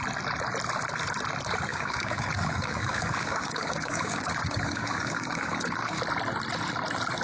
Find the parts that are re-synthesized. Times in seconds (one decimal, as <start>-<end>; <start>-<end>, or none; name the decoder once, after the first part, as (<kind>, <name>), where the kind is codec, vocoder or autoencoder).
1.7-6.0 (codec, DAC)